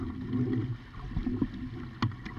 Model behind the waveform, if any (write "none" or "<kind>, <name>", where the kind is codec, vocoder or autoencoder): none